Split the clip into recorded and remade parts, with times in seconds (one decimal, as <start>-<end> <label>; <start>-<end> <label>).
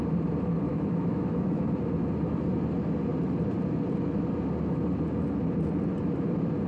0.0-0.7 recorded; 0.7-1.6 remade; 1.6-6.7 recorded